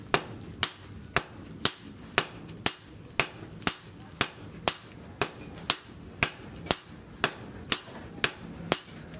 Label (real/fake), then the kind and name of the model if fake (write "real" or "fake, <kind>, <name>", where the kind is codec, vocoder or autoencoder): real